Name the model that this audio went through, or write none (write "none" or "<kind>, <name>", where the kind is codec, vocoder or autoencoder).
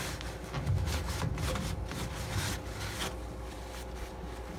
none